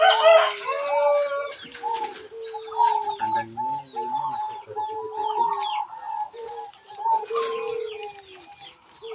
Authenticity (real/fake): real